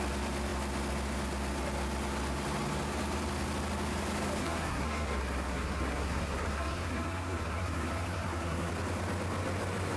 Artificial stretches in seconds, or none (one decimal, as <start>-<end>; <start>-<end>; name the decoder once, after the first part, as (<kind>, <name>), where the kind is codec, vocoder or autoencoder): 4.4-8.7 (codec, SNAC)